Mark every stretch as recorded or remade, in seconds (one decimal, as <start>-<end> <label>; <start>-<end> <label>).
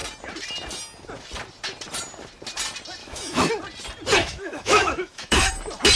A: 0.0-3.0 recorded; 3.0-3.5 remade; 3.5-4.2 recorded; 4.2-5.5 remade; 5.5-6.0 recorded